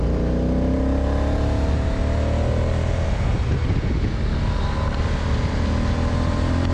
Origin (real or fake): real